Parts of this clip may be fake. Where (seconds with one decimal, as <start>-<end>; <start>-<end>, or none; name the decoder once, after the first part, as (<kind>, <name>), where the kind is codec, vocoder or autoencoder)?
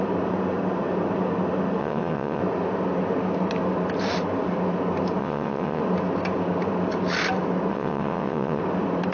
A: 1.8-2.4 (vocoder, WaveNeXt); 5.2-5.8; 7.7-8.6